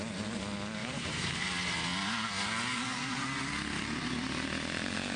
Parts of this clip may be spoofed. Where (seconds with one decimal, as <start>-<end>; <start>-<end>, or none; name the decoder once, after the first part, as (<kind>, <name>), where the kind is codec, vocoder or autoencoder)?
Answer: 0.8-1.4 (vocoder, BigVGAN v2)